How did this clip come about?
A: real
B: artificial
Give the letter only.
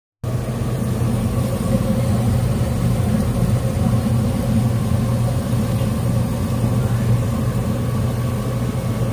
A